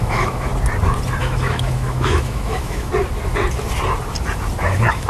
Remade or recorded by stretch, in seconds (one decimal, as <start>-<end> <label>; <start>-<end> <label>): 0.0-0.5 remade; 0.5-1.2 recorded; 1.2-2.9 remade; 2.9-4.6 recorded; 4.6-5.1 remade